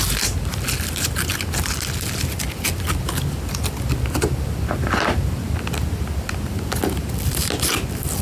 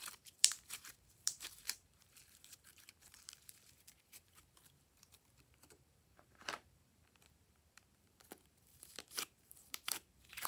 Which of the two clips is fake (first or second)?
second